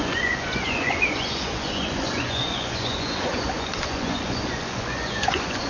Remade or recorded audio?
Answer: remade